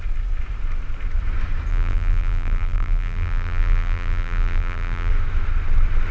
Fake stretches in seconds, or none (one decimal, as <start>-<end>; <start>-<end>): 1.7-5.1